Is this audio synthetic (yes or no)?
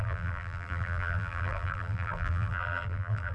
yes